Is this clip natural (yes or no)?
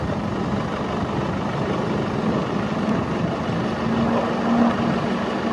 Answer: yes